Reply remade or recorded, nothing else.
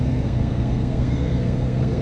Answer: remade